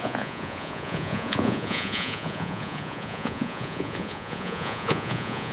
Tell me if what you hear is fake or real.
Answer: fake